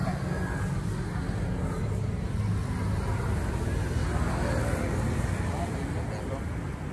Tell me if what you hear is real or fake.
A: real